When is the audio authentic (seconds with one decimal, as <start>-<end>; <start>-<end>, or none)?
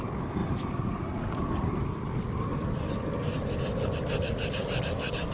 0.0-5.3